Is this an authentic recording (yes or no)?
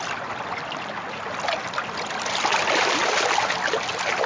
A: yes